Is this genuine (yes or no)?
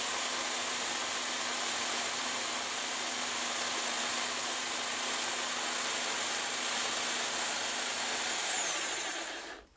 yes